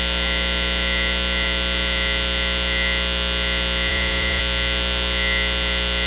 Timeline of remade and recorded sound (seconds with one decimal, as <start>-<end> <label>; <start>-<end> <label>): 0.0-3.9 recorded; 3.9-4.4 remade; 4.4-6.1 recorded